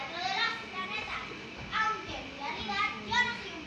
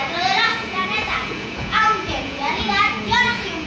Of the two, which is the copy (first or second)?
second